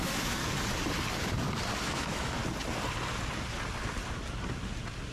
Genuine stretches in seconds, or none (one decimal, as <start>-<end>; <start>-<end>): 0.4-1.8; 2.4-5.1